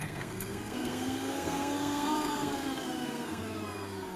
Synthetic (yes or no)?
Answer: yes